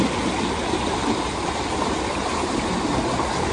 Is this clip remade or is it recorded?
recorded